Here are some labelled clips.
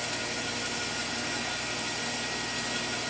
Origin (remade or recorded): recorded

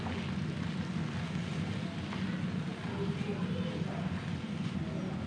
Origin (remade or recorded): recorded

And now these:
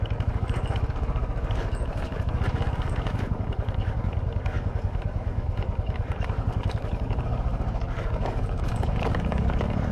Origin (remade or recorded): remade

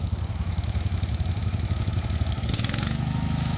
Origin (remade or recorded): remade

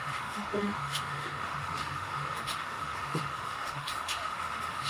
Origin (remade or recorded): remade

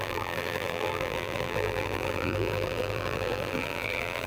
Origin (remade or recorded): remade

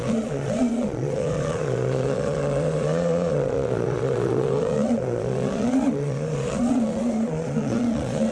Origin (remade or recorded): remade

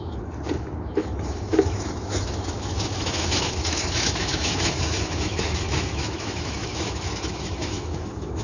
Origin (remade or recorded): remade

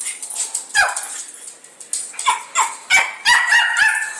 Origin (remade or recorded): recorded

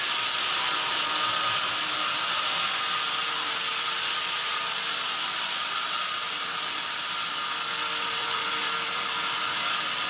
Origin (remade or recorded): recorded